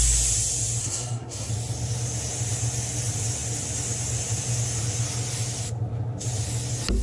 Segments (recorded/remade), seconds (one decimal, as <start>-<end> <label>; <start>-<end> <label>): 0.0-0.8 recorded; 0.8-1.5 remade; 1.5-7.0 recorded